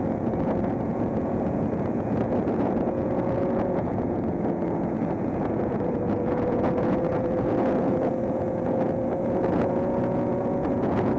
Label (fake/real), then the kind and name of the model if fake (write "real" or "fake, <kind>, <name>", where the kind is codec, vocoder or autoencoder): fake, vocoder, Vocos